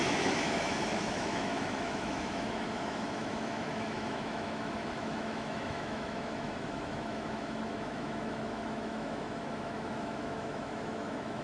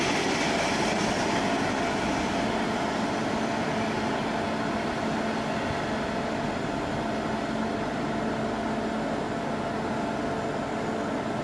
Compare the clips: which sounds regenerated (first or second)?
first